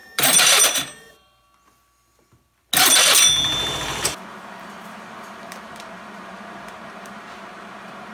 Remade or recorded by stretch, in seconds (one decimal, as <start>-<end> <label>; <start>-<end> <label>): 0.0-1.4 remade; 1.4-4.3 recorded; 4.3-8.1 remade